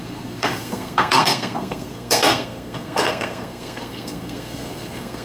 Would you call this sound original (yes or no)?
no